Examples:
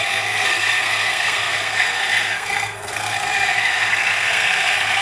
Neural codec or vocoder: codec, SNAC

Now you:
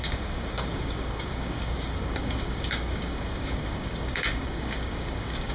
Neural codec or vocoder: codec, DAC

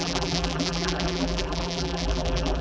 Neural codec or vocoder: vocoder, BigVGAN v2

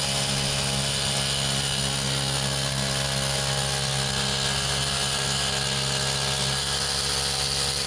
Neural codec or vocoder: none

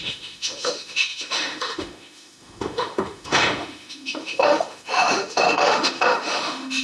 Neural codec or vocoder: autoencoder, DAC-VAE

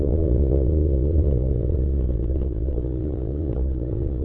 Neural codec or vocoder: vocoder, Vocos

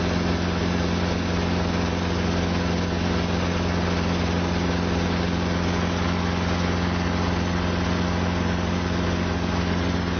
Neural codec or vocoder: none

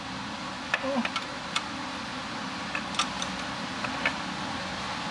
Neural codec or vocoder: none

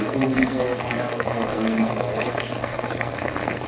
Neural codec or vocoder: codec, SNAC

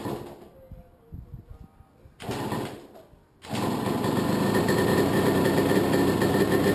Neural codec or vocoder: none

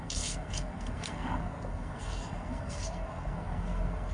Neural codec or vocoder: codec, SNAC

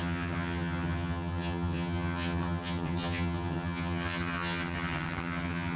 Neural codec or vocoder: vocoder, HiFi-GAN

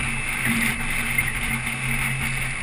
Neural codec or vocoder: none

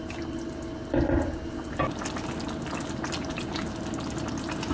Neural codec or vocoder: none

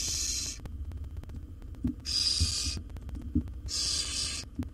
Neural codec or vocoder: none